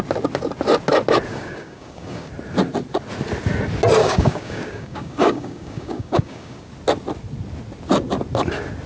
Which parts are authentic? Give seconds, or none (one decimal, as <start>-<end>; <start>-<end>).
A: 0.0-1.3; 2.3-4.0; 6.7-8.9